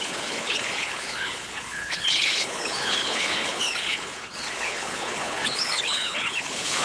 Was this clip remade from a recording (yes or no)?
yes